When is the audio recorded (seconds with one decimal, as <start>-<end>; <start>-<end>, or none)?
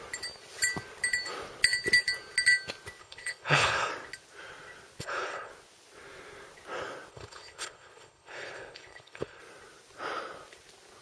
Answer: 0.0-3.0; 3.9-5.0; 5.5-7.1; 9.4-11.0